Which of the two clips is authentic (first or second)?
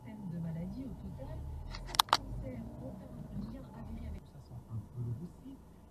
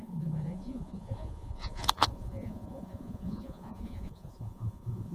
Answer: first